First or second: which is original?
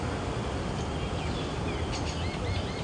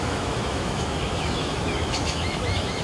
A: first